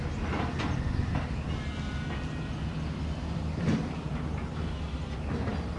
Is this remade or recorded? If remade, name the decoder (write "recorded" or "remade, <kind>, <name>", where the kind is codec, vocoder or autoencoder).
recorded